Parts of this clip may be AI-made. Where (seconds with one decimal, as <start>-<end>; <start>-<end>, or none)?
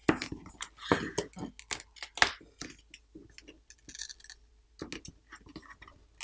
none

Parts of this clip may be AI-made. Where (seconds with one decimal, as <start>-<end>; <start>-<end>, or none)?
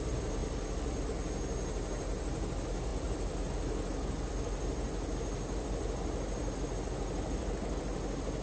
none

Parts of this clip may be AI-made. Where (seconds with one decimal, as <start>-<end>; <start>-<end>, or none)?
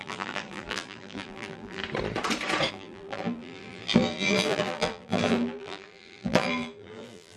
0.0-1.8; 2.7-7.4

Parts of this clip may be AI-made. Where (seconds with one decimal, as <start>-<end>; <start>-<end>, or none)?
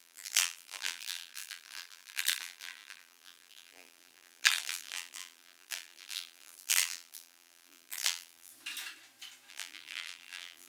0.0-8.5; 9.5-10.7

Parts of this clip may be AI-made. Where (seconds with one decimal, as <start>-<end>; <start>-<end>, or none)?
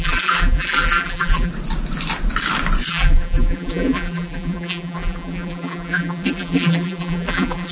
0.0-1.5; 2.9-7.7